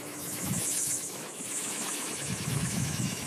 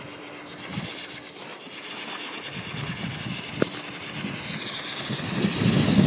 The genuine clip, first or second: second